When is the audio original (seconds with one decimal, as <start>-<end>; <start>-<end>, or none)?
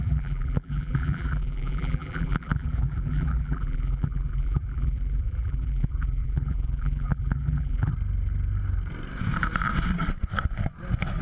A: 7.9-11.2